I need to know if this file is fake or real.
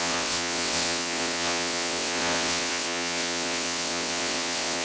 fake